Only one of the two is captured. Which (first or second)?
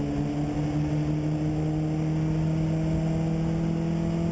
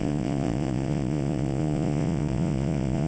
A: first